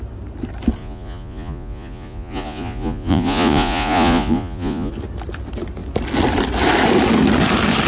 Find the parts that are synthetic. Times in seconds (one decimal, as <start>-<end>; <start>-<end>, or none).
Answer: 0.8-4.9